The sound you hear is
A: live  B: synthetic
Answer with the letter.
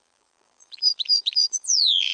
B